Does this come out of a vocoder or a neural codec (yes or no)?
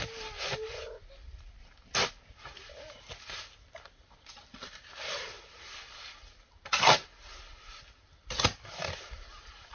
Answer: no